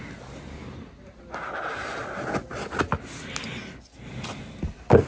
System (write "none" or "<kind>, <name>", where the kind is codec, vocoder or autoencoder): none